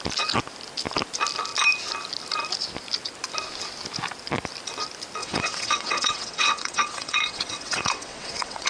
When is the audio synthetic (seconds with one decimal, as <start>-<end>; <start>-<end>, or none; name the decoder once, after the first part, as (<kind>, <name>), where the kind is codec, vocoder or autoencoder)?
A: 5.2-8.7 (vocoder, WaveNeXt)